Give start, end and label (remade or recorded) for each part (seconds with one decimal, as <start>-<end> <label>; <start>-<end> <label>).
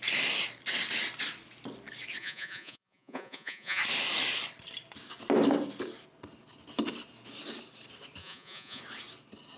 0.0-2.2 recorded; 2.2-3.8 remade; 3.8-8.2 recorded; 8.2-8.8 remade; 8.8-9.6 recorded